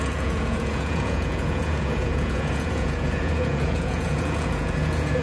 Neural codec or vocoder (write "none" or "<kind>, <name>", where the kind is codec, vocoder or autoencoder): vocoder, Vocos